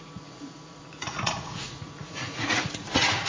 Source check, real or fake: fake